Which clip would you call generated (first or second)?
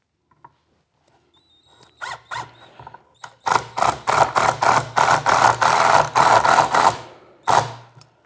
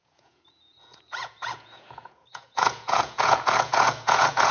second